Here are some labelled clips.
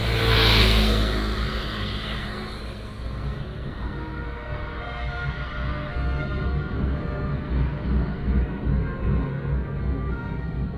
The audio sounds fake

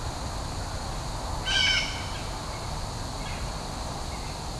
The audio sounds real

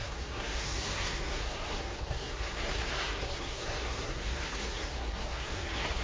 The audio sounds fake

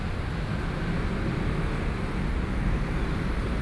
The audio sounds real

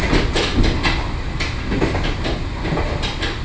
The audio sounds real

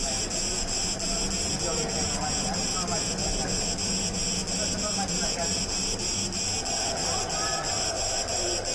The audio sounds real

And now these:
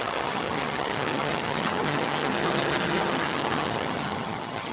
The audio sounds fake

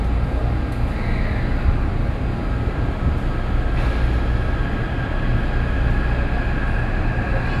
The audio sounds real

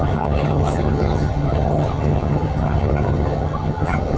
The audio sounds fake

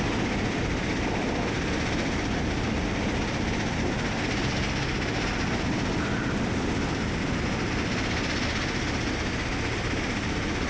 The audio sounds real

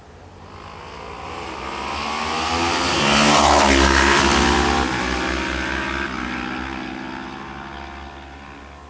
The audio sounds real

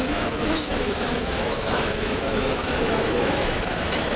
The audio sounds fake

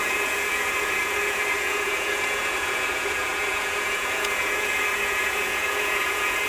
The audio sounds fake